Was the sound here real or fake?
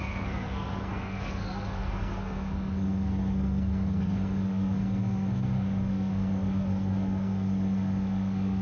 fake